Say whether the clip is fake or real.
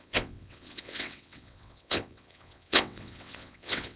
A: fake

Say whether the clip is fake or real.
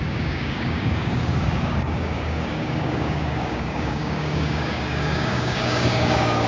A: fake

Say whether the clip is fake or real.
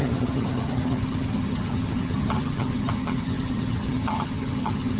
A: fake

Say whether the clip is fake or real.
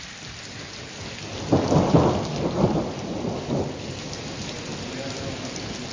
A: real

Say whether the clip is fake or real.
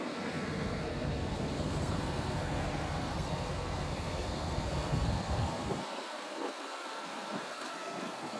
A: fake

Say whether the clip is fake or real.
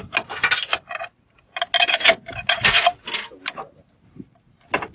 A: real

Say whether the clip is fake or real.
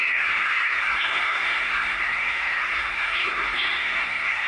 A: fake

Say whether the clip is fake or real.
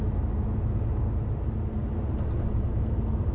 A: real